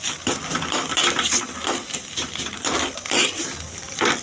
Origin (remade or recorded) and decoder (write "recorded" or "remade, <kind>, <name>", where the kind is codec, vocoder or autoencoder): remade, vocoder, BigVGAN v2